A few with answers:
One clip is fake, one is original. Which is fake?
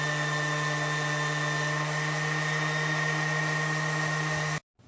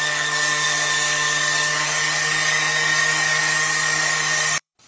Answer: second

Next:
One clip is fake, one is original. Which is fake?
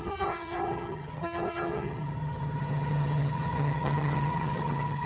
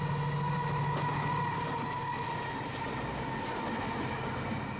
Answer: first